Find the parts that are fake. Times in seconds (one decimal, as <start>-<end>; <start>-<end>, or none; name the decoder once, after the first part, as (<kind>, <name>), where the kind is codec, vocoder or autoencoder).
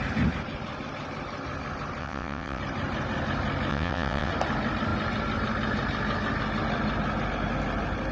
2.0-2.6 (vocoder, WaveNeXt); 3.7-4.3